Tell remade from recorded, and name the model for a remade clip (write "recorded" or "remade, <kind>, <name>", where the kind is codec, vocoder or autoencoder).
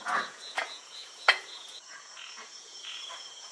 remade, vocoder, Vocos